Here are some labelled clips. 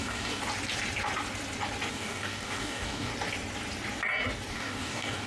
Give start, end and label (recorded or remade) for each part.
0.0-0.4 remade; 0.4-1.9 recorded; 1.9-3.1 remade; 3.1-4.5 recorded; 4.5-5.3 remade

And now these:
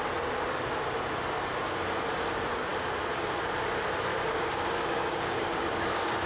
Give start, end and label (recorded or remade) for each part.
0.0-4.1 recorded; 4.1-6.3 remade